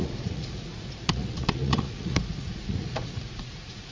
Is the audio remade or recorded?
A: remade